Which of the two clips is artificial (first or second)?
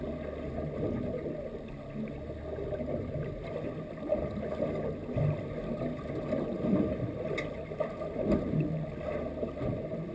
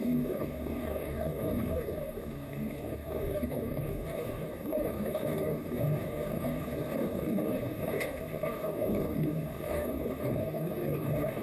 second